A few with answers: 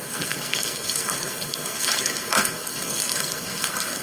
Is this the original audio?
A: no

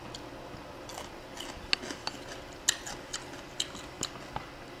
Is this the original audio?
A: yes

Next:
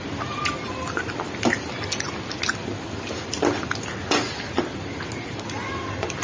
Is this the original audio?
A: yes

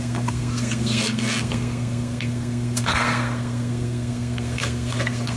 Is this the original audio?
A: no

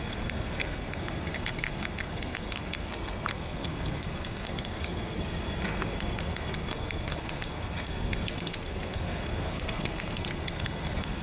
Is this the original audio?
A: no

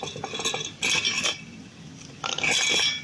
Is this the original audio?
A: yes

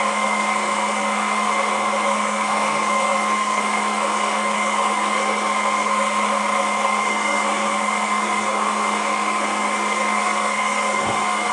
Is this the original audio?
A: no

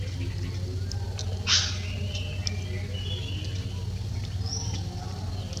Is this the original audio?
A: yes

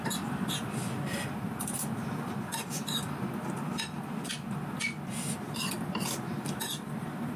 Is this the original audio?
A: yes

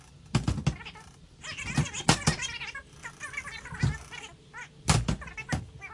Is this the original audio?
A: yes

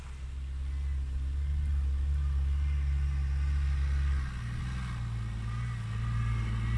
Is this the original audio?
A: yes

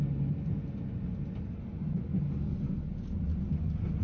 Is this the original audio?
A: yes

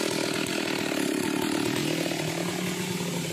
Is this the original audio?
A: yes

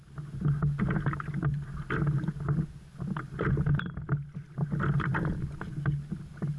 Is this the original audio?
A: yes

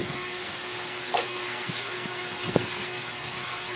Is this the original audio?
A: no